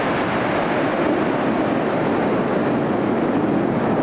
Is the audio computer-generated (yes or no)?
no